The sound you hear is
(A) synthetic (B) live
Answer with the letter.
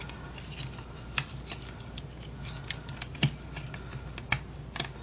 B